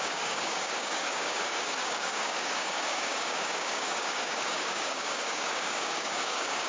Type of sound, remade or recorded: remade